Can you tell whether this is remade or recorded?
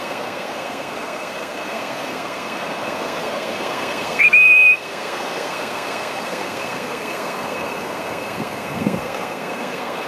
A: remade